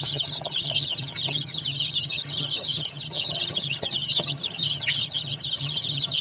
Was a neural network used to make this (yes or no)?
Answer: yes